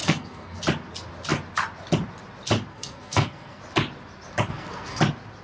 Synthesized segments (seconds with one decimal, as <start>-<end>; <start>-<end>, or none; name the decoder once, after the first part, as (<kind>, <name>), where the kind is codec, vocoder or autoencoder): 0.0-0.6 (codec, SNAC); 2.7-3.6; 4.5-5.0